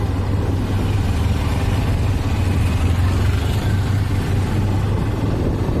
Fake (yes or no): no